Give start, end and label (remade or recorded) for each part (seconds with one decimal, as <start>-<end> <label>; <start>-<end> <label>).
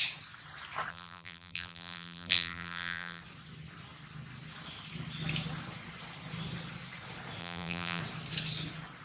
0.0-0.9 recorded; 0.9-3.2 remade; 3.2-7.4 recorded; 7.4-8.0 remade; 8.0-9.0 recorded